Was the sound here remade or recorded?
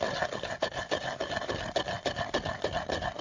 recorded